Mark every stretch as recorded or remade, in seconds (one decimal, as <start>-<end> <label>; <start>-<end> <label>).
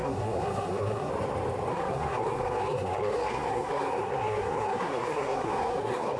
0.0-1.1 remade; 1.1-1.7 recorded; 1.7-6.2 remade